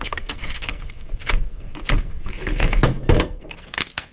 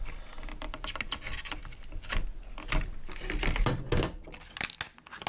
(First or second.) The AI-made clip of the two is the first